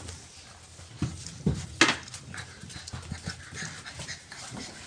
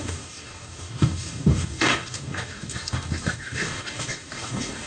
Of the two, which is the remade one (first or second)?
second